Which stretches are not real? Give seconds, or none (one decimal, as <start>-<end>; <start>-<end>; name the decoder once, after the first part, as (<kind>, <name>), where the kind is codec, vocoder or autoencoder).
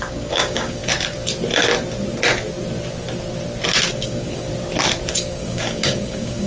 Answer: 0.0-0.8 (codec, DAC); 3.9-4.5; 5.1-6.5